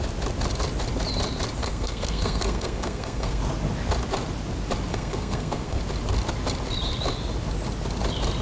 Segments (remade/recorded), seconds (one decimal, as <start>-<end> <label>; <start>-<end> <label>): 0.0-1.6 recorded; 1.6-3.4 remade; 3.4-4.9 recorded; 4.9-5.8 remade; 5.8-8.4 recorded